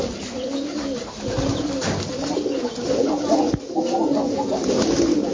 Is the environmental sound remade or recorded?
recorded